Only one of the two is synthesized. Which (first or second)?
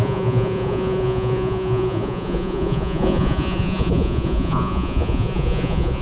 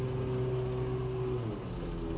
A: first